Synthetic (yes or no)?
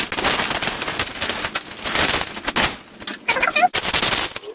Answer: no